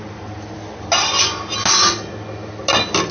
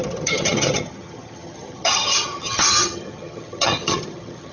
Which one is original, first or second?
first